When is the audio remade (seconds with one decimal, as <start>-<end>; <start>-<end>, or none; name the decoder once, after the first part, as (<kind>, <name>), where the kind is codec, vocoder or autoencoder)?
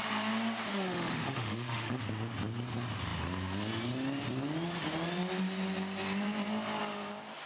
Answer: 0.7-2.0 (autoencoder, DAC-VAE)